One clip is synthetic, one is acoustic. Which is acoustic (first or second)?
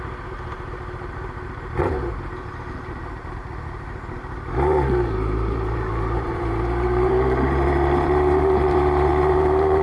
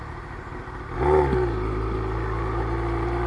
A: second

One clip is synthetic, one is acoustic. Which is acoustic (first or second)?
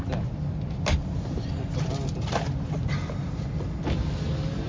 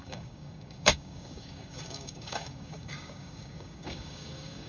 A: first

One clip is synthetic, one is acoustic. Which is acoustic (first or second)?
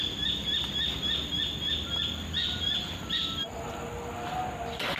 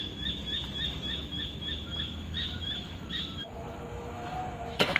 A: first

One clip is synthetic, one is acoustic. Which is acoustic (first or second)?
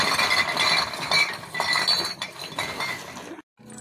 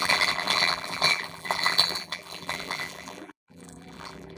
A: first